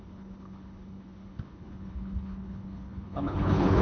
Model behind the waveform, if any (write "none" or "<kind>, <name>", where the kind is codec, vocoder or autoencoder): codec, HILCodec